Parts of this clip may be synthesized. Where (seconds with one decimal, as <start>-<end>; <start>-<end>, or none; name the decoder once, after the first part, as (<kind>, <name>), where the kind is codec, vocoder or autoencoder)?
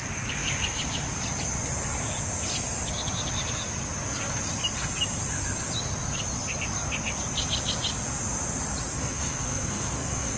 9.0-10.4 (codec, SNAC)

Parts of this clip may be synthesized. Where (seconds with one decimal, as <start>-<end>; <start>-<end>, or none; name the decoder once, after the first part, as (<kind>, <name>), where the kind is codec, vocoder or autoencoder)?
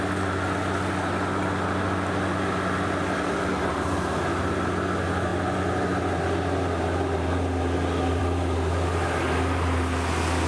none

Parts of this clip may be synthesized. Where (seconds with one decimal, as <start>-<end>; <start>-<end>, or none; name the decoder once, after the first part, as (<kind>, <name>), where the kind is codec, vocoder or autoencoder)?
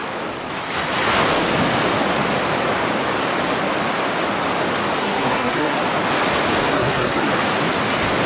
5.0-5.8 (codec, SNAC); 6.6-7.3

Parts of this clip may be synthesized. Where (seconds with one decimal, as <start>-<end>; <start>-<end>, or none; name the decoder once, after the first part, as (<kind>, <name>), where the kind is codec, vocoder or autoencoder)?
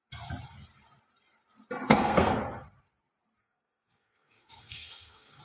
1.9-2.4 (codec, SNAC); 3.4-5.4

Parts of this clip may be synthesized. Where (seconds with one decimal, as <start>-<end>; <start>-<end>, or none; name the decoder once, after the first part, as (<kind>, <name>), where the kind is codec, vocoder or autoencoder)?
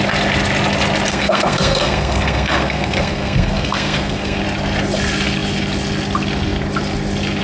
1.1-4.4 (codec, SNAC)